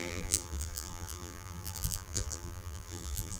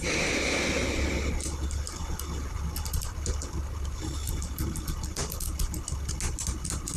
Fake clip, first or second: first